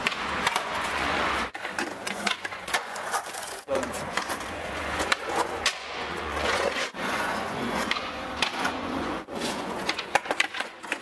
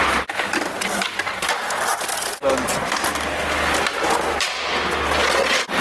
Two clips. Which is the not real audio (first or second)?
first